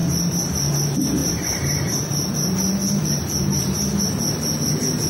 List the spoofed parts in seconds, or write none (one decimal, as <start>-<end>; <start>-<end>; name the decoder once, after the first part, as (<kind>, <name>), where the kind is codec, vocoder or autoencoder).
0.0-0.7 (vocoder, BigVGAN v2); 1.2-4.0